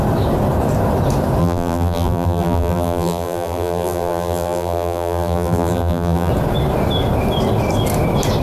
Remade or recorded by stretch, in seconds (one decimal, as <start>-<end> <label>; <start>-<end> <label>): 0.0-1.4 recorded; 1.4-6.3 remade; 6.3-8.4 recorded